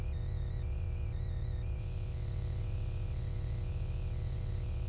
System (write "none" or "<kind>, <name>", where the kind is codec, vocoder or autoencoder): vocoder, WaveNeXt